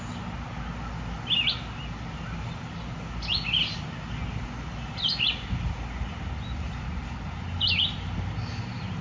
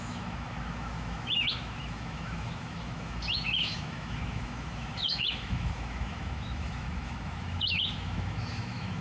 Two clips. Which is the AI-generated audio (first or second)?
second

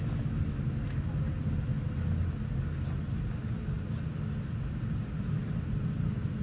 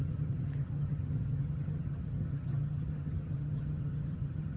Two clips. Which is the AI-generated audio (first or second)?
second